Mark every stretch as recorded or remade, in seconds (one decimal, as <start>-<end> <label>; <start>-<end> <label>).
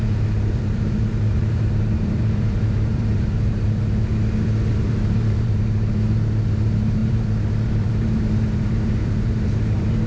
0.0-4.1 remade; 4.1-4.7 recorded; 4.7-10.1 remade